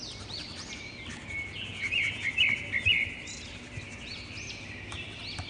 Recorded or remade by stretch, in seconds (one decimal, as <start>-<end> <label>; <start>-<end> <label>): 0.0-1.7 recorded; 1.7-2.3 remade; 2.3-5.5 recorded